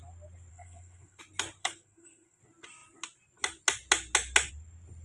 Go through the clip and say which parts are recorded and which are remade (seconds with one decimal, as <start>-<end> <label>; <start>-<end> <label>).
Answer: 0.0-0.5 recorded; 0.5-1.2 remade; 1.2-1.6 recorded; 1.6-2.4 remade; 2.4-5.0 recorded